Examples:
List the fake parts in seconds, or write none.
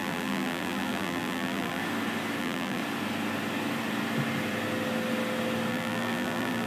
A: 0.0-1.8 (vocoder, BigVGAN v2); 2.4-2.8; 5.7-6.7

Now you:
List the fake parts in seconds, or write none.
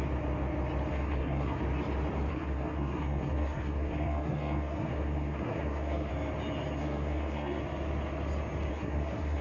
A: 0.9-1.6 (codec, SNAC); 2.3-6.1; 6.8-7.6; 8.7-9.4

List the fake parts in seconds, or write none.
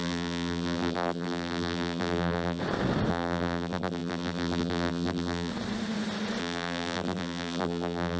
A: 0.0-2.6 (vocoder, BigVGAN v2); 3.1-5.5; 6.4-8.2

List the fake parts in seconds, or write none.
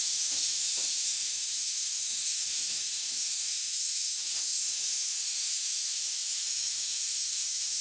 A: 0.0-7.8 (autoencoder, DAC-VAE)